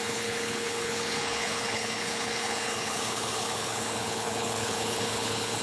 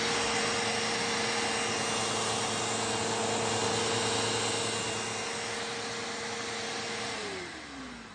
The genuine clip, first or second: second